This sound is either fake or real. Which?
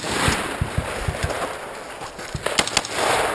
real